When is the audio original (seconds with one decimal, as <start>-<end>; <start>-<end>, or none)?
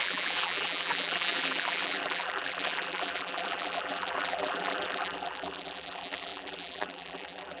none